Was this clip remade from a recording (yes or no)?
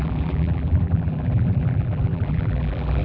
yes